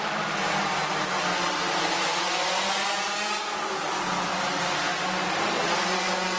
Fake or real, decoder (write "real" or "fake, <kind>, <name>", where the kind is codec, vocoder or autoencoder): real